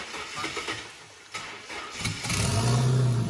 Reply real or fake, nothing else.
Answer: real